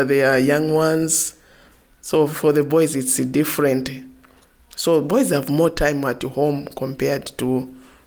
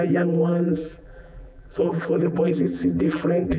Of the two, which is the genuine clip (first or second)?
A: first